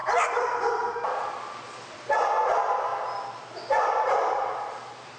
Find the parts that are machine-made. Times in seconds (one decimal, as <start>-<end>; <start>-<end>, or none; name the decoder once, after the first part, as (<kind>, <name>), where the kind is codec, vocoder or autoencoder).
0.0-2.9 (vocoder, BigVGAN v2); 4.3-5.2